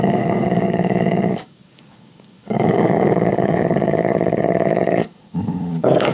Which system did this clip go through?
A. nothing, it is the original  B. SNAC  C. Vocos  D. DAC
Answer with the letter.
D